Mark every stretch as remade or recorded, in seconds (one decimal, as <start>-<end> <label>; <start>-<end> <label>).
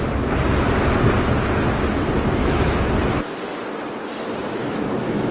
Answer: 0.0-2.4 recorded; 2.4-3.1 remade; 3.1-4.6 recorded; 4.6-5.3 remade